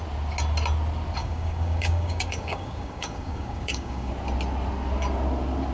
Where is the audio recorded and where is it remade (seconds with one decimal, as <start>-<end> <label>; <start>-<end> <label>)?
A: 0.0-1.2 recorded; 1.2-4.1 remade; 4.1-5.7 recorded